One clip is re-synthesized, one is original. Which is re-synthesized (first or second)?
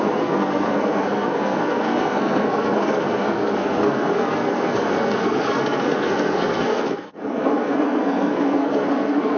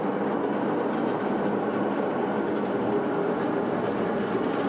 first